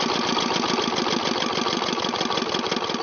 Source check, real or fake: real